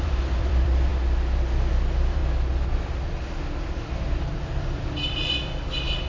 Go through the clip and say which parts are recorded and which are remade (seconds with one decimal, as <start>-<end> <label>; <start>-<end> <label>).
0.0-0.9 remade; 0.9-1.7 recorded; 1.7-2.2 remade; 2.2-3.9 recorded; 3.9-5.2 remade; 5.2-6.1 recorded